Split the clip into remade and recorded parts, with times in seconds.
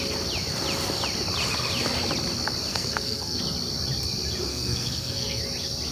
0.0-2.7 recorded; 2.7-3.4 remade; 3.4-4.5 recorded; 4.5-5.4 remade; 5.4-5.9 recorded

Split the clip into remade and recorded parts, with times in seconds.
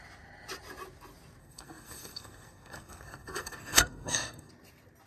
0.0-1.4 recorded; 1.4-4.5 remade; 4.5-5.1 recorded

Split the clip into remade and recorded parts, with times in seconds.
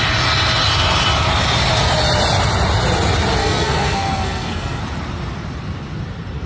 0.0-3.4 recorded; 3.4-4.8 remade; 4.8-6.5 recorded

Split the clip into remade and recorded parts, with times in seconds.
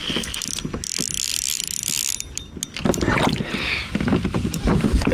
0.0-5.1 recorded